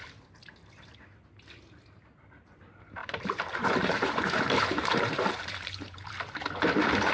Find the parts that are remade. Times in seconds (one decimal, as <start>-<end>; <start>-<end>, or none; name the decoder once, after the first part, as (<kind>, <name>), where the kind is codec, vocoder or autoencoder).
3.0-6.1 (vocoder, BigVGAN v2)